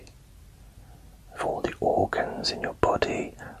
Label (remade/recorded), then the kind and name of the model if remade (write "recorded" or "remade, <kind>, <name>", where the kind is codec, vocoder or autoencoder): recorded